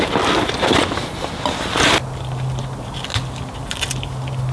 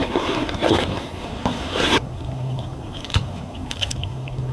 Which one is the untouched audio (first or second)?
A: first